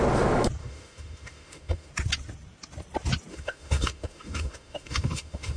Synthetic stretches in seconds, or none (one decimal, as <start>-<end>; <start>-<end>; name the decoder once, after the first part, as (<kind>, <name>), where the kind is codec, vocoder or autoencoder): 0.6-1.9 (autoencoder, DAC-VAE); 3.3-5.6